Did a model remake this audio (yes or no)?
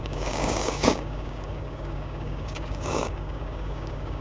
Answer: yes